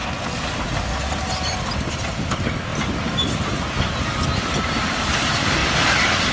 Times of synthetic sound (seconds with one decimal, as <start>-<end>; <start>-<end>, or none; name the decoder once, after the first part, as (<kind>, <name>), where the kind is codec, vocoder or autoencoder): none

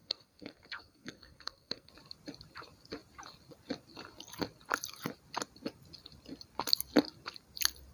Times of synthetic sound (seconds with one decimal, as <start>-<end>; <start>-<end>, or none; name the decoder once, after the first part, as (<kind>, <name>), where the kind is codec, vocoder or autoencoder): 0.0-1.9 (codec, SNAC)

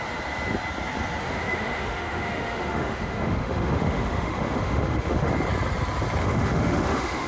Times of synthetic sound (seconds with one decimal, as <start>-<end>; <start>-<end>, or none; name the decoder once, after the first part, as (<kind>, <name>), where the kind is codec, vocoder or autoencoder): 1.2-5.3 (autoencoder, DAC-VAE); 6.2-7.3

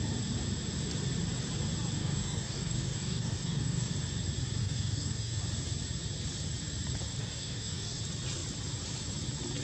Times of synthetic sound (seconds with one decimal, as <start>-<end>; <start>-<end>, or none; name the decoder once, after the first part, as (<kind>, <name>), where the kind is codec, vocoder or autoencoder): 2.0-3.9 (codec, DAC); 4.6-5.4; 7.2-8.0

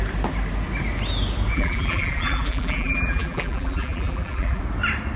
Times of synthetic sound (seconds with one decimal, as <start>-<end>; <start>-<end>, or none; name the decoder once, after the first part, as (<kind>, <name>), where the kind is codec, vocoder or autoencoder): 1.5-4.6 (vocoder, BigVGAN v2)